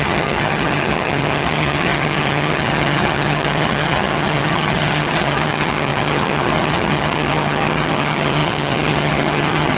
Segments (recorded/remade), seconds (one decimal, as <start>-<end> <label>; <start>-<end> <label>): 0.0-9.8 remade